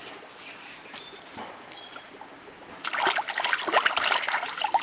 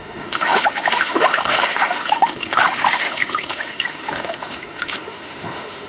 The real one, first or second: first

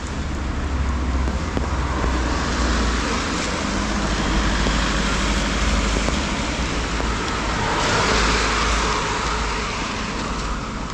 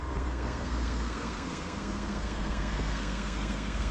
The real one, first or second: first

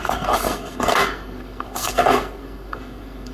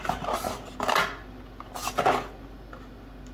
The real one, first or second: second